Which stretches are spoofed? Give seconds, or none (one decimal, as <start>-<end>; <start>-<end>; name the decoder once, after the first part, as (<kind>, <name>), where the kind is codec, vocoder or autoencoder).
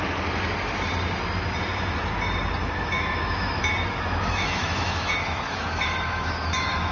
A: 2.6-6.9 (autoencoder, DAC-VAE)